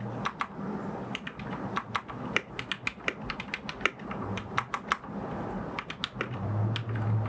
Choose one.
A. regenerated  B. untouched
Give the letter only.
B